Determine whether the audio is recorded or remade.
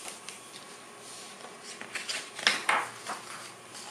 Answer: recorded